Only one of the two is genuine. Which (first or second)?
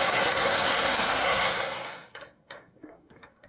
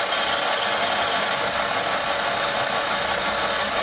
second